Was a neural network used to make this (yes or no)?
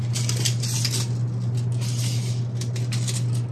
no